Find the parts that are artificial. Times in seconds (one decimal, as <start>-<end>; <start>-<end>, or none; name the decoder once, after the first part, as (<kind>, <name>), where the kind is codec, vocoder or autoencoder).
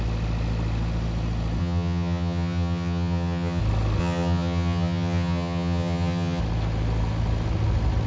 1.6-3.6 (vocoder, HiFi-GAN); 4.0-6.4